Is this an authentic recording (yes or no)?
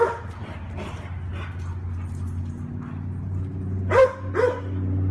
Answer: yes